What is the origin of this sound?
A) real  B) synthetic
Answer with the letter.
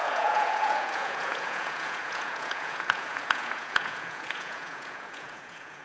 B